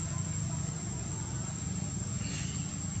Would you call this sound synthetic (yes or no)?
no